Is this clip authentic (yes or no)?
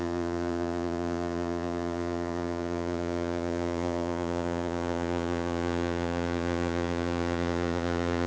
no